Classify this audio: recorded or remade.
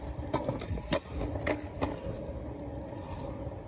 recorded